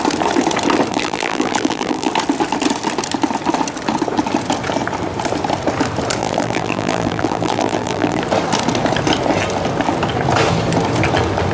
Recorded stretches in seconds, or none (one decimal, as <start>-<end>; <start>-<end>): 0.0-0.9; 2.1-6.2; 8.2-11.5